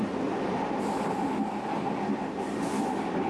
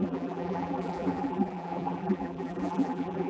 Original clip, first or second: first